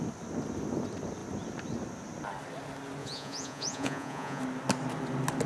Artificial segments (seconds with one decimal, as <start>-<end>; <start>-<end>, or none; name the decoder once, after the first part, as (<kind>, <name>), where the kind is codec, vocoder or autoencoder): 3.0-4.4 (vocoder, Vocos)